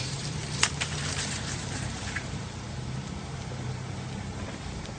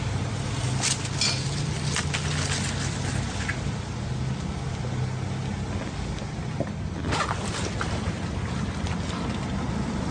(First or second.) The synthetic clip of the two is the first